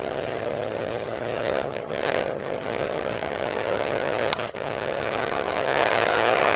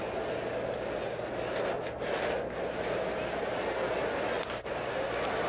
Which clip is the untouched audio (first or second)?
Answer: second